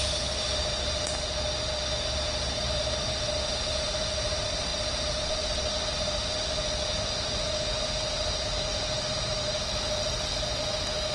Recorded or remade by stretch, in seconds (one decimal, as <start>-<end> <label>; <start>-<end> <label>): 0.0-11.1 recorded